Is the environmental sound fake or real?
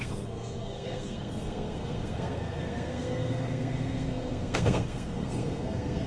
fake